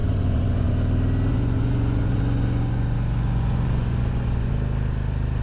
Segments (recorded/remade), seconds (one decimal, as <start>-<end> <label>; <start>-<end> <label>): 0.0-0.7 remade; 0.7-1.3 recorded; 1.3-4.5 remade; 4.5-5.4 recorded